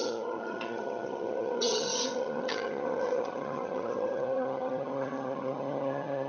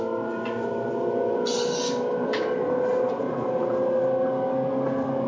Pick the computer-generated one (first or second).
first